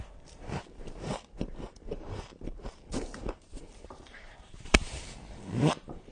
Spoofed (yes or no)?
yes